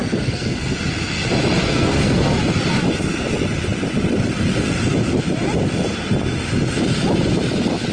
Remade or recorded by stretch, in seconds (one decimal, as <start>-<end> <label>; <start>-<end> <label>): 0.0-0.7 remade; 0.7-1.6 recorded; 1.6-2.3 remade; 2.3-7.9 recorded